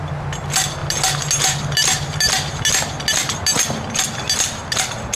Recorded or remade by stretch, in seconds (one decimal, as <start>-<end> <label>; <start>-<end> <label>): 0.0-5.1 recorded